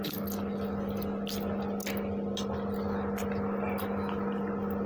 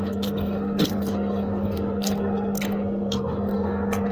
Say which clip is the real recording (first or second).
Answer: first